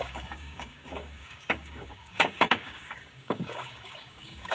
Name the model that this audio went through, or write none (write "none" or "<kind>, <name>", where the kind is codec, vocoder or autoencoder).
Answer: codec, DAC